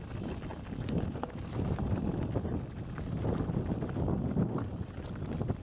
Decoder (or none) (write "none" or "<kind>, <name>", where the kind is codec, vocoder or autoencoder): none